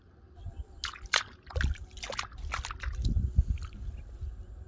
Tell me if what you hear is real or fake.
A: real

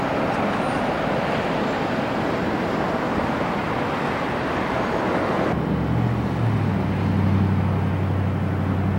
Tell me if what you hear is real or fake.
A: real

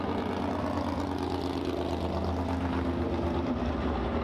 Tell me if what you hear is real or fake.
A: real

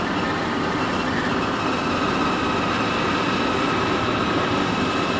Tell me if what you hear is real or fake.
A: real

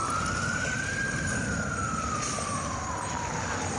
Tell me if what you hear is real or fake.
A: real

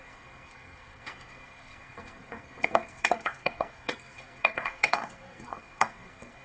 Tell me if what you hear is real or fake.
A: fake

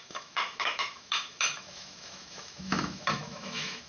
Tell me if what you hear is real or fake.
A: fake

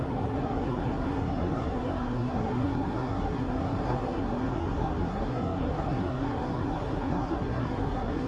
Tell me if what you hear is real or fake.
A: fake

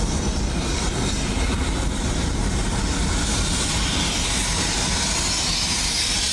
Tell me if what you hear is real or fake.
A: fake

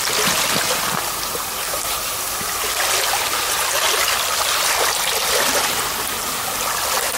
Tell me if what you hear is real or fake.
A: real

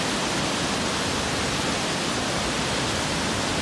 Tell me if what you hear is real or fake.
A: real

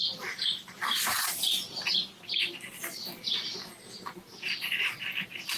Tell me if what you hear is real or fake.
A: real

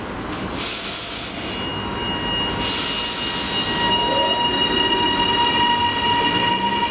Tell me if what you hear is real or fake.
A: real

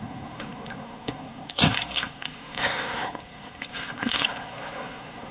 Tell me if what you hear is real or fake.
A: fake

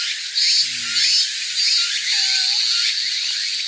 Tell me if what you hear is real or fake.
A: real